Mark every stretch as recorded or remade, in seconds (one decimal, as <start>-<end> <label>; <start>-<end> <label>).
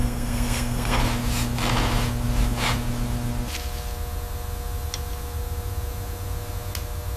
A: 0.0-1.0 remade; 1.0-7.2 recorded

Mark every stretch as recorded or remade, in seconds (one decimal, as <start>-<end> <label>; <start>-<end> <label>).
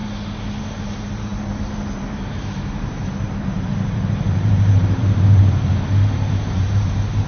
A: 0.0-0.6 recorded; 0.6-7.3 remade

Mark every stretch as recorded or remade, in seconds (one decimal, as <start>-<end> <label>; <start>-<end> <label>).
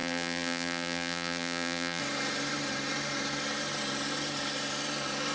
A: 0.0-2.0 remade; 2.0-5.3 recorded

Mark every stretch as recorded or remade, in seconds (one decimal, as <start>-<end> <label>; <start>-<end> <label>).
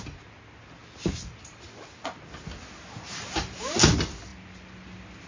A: 0.0-5.3 recorded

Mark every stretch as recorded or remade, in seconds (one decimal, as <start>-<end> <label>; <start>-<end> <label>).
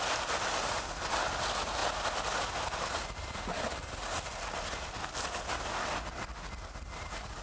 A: 0.0-7.4 recorded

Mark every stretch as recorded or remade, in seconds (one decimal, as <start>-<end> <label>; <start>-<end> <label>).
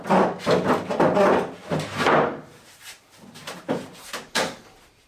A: 0.0-3.4 recorded; 3.4-4.6 remade; 4.6-5.1 recorded